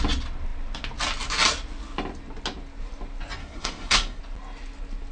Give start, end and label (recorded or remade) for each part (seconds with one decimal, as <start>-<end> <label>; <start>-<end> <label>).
0.0-3.4 recorded; 3.4-4.2 remade; 4.2-5.1 recorded